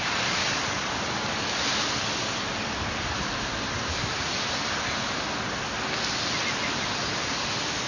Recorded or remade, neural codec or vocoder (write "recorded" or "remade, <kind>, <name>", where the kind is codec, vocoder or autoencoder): recorded